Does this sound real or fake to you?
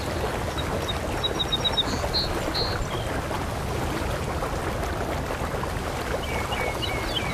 real